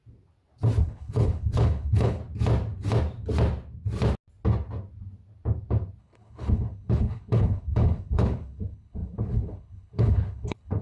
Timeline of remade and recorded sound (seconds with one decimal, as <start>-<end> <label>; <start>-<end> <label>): 0.0-0.8 recorded; 0.8-2.2 remade; 2.2-6.0 recorded; 6.0-10.8 remade

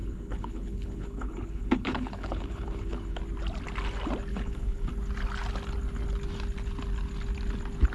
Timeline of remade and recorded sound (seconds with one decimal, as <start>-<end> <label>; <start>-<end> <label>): 0.0-3.2 remade; 3.2-4.3 recorded; 4.3-4.9 remade; 4.9-7.9 recorded

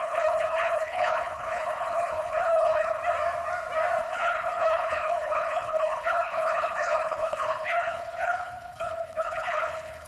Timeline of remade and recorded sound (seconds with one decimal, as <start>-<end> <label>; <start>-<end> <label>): 0.0-3.0 remade; 3.0-4.0 recorded; 4.0-10.1 remade

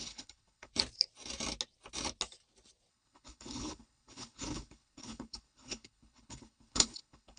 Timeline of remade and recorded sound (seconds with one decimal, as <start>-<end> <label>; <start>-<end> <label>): 0.0-0.7 remade; 0.7-2.9 recorded; 2.9-7.4 remade

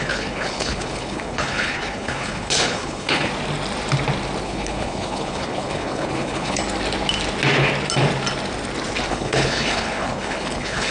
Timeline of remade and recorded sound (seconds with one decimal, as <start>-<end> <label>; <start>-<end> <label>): 0.0-3.3 remade; 3.3-4.4 recorded; 4.4-6.6 remade; 6.6-9.1 recorded; 9.1-10.9 remade

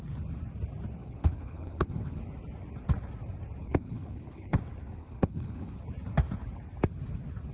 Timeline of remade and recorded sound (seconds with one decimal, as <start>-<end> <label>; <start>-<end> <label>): 0.0-1.0 recorded; 1.0-2.2 remade; 2.2-3.6 recorded; 3.6-4.6 remade; 4.6-5.0 recorded; 5.0-5.8 remade; 5.8-7.5 recorded